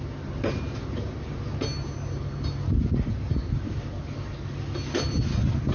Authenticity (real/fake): real